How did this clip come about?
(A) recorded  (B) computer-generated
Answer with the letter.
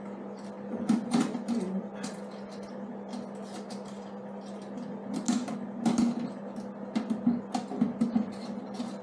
A